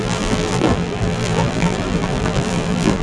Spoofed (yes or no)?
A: yes